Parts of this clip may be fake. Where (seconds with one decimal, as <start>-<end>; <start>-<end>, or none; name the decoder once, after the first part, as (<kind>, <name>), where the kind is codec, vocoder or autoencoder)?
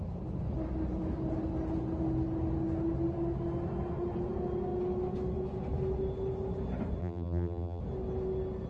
7.0-7.8 (vocoder, BigVGAN v2)